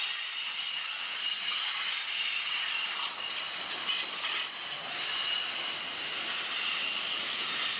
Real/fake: real